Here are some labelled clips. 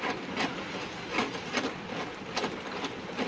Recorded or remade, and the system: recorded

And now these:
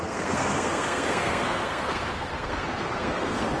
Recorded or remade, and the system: remade, codec, SNAC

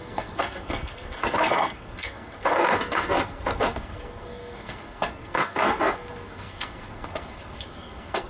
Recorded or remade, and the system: remade, codec, SNAC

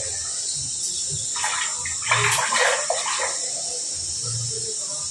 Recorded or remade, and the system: recorded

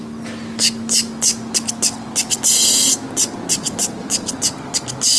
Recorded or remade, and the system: recorded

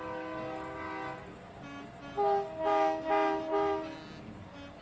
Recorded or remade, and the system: recorded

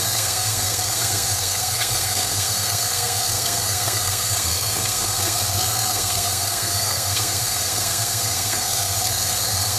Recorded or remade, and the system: remade, codec, SNAC